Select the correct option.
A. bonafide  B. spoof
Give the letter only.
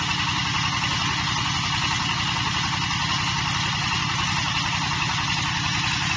A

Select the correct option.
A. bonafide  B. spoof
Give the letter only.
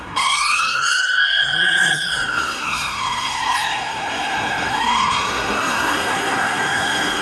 B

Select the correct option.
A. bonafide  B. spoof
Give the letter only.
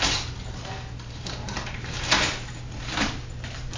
A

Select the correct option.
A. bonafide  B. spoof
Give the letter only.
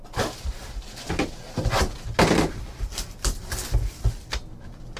A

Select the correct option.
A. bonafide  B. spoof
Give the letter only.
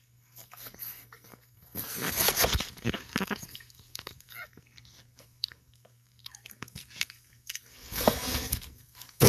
B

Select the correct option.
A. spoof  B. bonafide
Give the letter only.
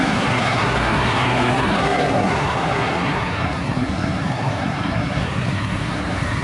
A